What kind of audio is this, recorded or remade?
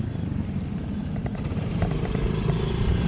remade